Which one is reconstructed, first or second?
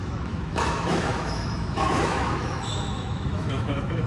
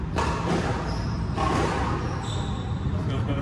first